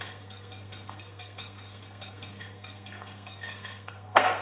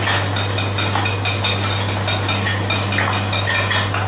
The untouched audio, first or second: second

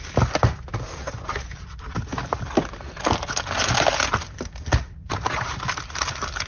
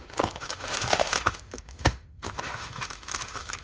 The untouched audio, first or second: first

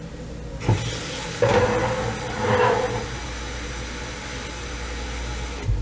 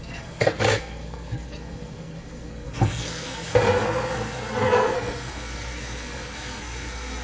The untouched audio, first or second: first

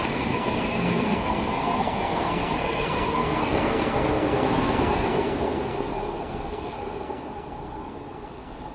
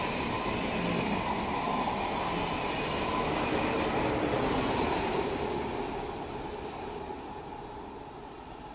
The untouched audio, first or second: second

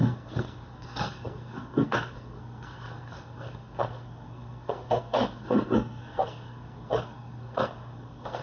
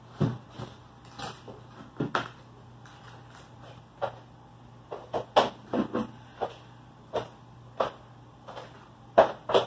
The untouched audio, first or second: second